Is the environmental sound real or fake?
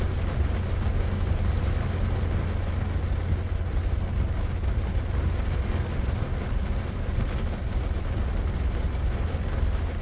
real